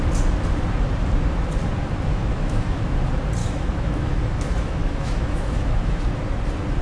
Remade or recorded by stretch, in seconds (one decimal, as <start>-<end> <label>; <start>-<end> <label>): 0.0-2.1 recorded; 2.1-2.9 remade; 2.9-3.4 recorded; 3.4-6.0 remade; 6.0-6.8 recorded